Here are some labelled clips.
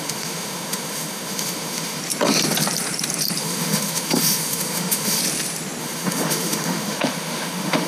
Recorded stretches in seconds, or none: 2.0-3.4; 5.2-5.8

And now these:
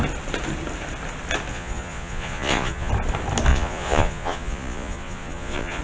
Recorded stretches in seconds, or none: 0.0-1.5; 2.9-3.5

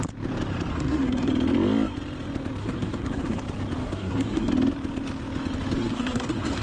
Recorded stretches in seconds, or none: 0.0-0.7; 1.3-2.6; 3.4-3.8; 4.5-5.8

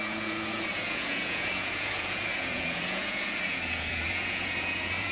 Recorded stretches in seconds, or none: none

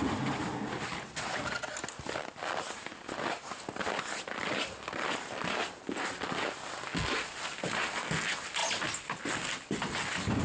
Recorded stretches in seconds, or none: 0.0-10.4